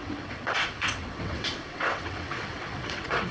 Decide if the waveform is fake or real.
fake